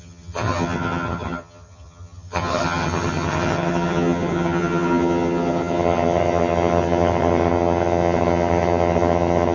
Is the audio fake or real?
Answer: fake